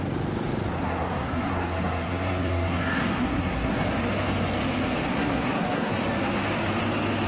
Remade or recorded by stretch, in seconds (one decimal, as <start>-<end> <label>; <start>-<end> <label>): 0.0-0.8 recorded; 0.8-3.9 remade; 3.9-5.1 recorded; 5.1-6.0 remade; 6.0-7.3 recorded